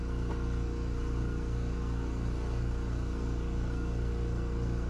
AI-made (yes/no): yes